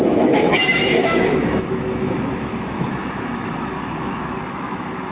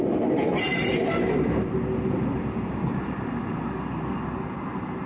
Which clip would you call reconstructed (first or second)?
first